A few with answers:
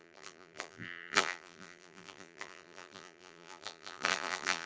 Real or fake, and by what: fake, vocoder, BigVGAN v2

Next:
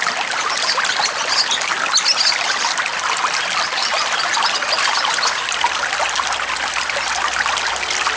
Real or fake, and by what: real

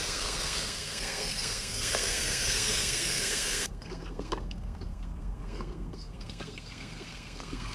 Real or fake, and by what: fake, codec, SNAC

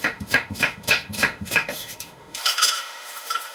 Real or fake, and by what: fake, autoencoder, DAC-VAE